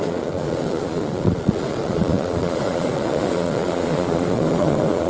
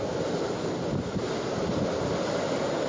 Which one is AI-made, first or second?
first